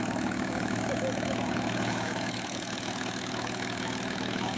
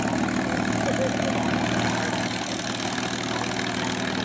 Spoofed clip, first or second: first